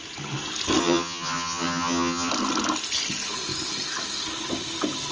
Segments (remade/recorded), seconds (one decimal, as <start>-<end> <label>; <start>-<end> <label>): 0.0-0.8 recorded; 0.8-2.3 remade; 2.3-5.1 recorded